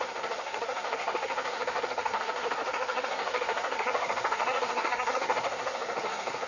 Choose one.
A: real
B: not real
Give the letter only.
B